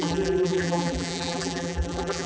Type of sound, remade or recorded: remade